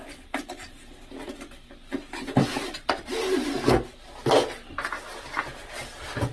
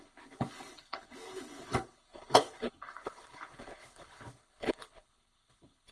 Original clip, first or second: first